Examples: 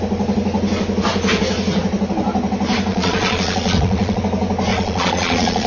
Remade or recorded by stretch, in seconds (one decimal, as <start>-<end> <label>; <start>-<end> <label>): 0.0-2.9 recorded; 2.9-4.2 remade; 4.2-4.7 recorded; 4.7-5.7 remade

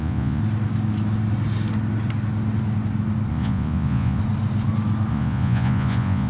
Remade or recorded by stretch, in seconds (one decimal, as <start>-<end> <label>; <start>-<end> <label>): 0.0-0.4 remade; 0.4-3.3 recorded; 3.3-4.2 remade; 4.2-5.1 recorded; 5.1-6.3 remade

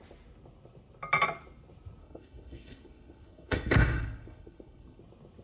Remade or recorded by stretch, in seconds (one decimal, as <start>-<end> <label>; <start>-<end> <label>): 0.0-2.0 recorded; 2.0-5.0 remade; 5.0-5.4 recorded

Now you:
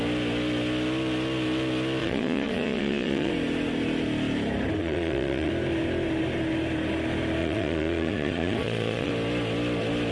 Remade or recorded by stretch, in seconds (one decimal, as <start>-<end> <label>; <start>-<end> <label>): 0.0-2.0 recorded; 2.0-3.3 remade; 3.3-4.8 recorded; 4.8-5.5 remade; 5.5-7.4 recorded; 7.4-9.1 remade; 9.1-10.1 recorded

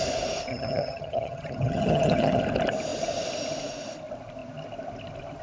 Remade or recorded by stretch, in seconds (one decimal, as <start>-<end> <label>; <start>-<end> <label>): 0.0-0.5 recorded; 0.5-2.4 remade; 2.4-5.4 recorded

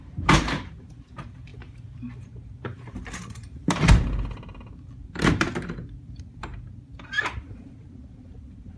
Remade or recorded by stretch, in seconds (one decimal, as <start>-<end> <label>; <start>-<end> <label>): 0.0-6.5 remade; 6.5-7.2 recorded; 7.2-8.8 remade